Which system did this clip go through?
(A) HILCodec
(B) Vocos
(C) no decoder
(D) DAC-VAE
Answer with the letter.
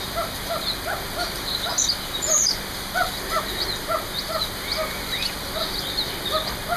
C